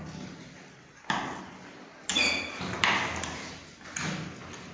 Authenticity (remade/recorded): recorded